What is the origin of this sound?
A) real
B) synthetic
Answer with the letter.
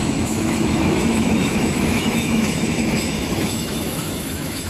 B